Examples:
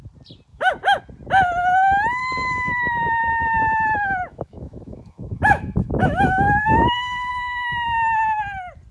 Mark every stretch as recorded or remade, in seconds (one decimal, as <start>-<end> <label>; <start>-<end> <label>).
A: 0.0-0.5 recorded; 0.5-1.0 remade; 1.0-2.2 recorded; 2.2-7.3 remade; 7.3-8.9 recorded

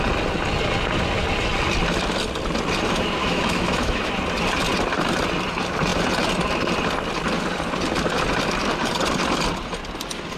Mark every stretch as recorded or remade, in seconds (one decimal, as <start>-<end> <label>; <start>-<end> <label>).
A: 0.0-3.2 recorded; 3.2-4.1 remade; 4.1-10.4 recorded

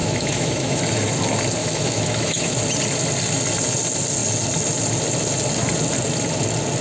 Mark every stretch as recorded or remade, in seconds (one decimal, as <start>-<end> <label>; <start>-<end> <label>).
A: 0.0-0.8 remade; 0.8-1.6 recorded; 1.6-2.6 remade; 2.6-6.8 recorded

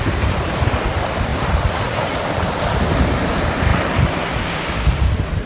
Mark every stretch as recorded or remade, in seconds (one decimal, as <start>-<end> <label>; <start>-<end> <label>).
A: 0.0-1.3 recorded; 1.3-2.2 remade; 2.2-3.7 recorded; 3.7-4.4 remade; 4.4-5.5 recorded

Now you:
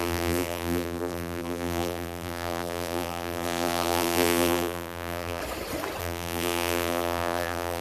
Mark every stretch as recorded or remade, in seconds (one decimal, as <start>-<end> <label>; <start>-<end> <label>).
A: 0.0-5.4 remade; 5.4-6.0 recorded; 6.0-7.8 remade

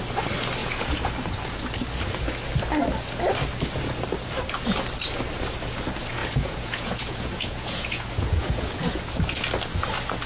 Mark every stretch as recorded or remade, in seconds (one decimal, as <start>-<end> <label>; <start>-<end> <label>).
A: 0.0-0.6 recorded; 0.6-1.1 remade; 1.1-6.2 recorded; 6.2-9.0 remade; 9.0-10.3 recorded